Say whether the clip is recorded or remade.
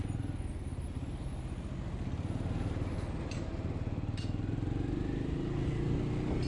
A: recorded